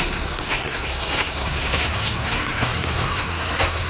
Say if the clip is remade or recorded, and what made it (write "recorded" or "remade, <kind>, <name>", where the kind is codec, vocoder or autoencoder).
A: remade, codec, SNAC